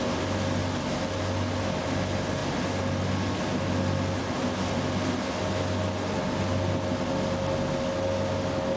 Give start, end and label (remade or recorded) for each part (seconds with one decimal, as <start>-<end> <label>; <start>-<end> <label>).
0.0-8.8 recorded